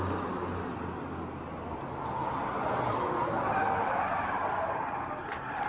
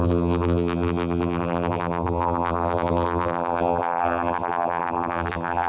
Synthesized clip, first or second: second